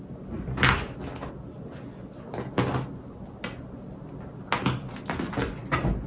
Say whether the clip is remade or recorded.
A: recorded